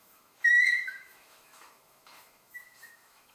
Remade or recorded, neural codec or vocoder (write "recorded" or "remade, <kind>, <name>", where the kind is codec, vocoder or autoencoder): remade, autoencoder, DAC-VAE